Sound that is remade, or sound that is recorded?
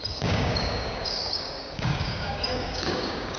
remade